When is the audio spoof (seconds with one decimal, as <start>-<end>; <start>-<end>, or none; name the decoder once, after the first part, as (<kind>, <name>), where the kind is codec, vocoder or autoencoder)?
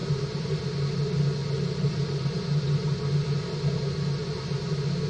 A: 0.0-0.6 (vocoder, BigVGAN v2); 1.4-2.6